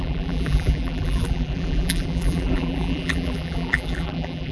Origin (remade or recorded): remade